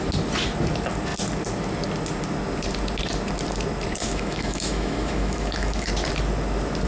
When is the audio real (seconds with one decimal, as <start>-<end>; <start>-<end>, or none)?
0.0-4.0; 5.9-6.9